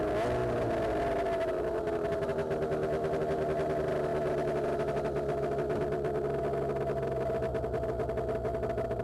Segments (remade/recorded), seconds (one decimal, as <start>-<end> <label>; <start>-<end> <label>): 0.0-9.0 recorded